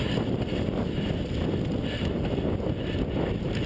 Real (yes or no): yes